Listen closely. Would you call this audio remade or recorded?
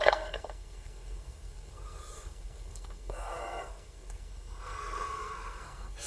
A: remade